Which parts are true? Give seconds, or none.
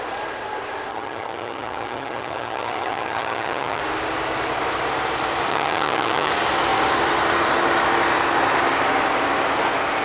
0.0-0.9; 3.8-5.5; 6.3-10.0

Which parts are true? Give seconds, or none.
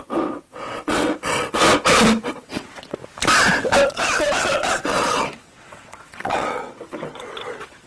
1.6-2.2; 3.0-3.9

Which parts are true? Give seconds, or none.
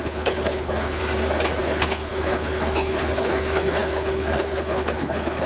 1.0-1.6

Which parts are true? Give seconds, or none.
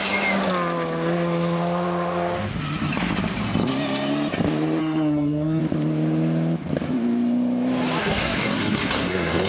0.0-4.8; 5.6-8.0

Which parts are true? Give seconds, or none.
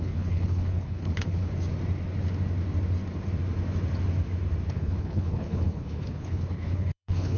1.5-4.7